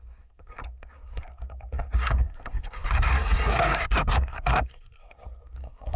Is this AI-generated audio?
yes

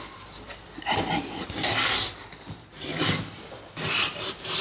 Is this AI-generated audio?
no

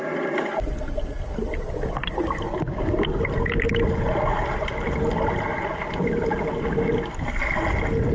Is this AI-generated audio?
no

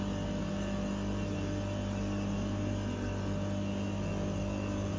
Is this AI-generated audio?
no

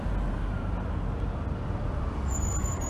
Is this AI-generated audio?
no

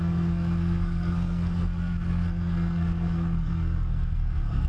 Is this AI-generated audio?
yes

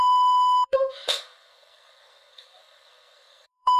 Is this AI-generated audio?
yes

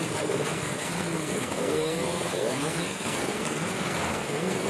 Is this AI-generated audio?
yes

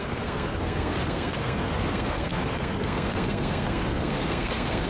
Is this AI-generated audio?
yes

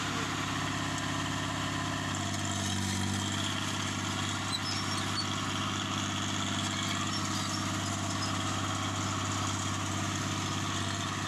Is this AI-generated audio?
no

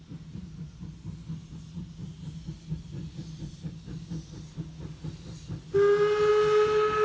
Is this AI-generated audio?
no